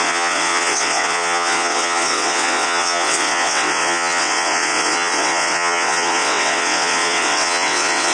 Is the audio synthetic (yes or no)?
yes